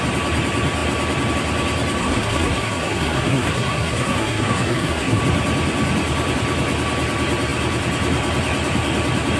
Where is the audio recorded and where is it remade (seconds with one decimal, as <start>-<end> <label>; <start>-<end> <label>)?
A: 0.0-2.0 recorded; 2.0-5.2 remade; 5.2-9.4 recorded